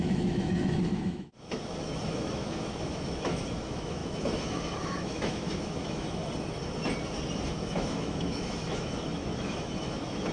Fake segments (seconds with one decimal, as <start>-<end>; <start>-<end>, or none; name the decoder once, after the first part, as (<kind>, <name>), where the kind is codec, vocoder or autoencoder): 0.0-6.2 (autoencoder, DAC-VAE); 7.5-10.3